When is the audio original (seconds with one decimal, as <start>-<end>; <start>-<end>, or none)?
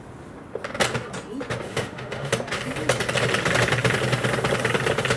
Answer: 0.0-1.7; 2.3-5.2